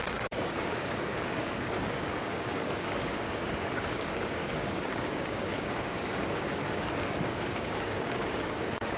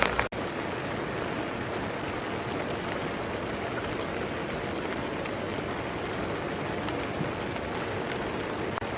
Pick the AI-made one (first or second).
first